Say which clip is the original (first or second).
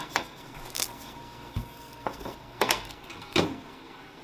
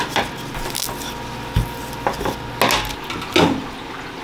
second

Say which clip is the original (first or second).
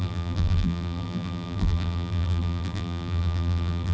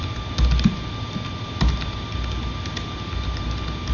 second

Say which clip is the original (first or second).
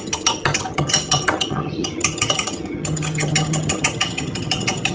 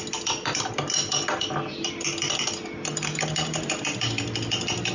second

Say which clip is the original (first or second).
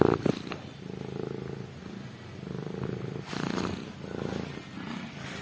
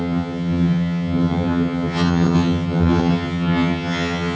first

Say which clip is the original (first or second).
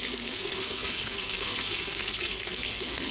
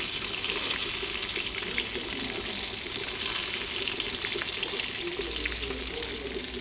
second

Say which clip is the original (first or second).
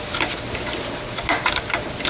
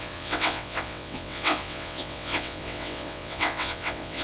first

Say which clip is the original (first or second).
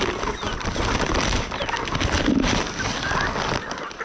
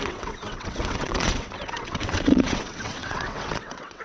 first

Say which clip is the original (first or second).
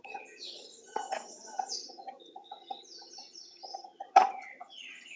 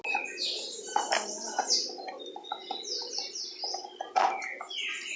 second